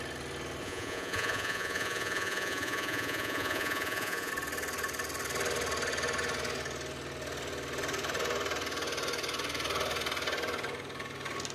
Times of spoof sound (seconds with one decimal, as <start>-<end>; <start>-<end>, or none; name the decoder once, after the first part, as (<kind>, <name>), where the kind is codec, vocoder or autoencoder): 0.6-4.3 (vocoder, Vocos)